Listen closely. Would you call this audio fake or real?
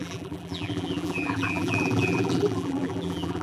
fake